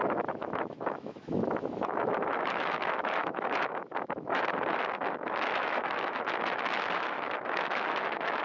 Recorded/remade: remade